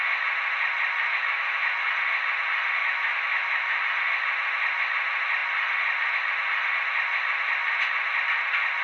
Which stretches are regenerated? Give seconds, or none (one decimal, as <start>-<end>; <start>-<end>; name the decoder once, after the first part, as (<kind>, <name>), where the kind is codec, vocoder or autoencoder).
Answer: 1.1-1.9 (autoencoder, DAC-VAE); 2.8-3.8

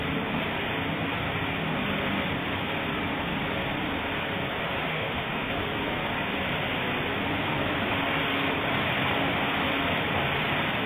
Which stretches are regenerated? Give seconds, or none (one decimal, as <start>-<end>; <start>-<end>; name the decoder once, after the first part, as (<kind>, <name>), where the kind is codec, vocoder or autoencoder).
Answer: 4.9-5.5 (autoencoder, DAC-VAE)

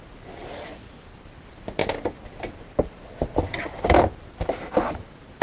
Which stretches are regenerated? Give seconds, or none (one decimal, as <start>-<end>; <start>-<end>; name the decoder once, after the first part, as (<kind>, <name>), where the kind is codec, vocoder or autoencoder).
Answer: none

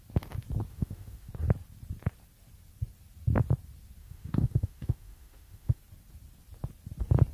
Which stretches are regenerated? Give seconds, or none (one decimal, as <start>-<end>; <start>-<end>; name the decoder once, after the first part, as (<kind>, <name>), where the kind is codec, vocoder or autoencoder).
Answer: 0.7-1.3 (autoencoder, DAC-VAE); 4.0-5.8

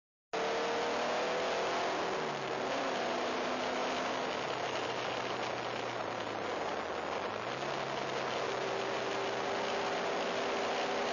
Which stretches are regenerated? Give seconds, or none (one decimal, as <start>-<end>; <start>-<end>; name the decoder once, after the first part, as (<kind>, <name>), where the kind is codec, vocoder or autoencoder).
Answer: none

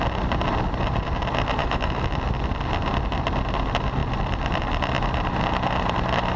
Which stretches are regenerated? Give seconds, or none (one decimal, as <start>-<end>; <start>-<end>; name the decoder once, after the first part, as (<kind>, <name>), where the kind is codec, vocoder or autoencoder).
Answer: 1.6-2.1 (autoencoder, DAC-VAE)